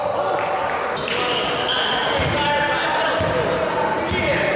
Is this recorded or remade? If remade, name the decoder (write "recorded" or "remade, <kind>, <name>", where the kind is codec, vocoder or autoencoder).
recorded